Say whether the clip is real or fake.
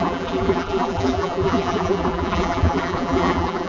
fake